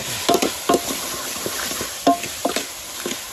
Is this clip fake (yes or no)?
no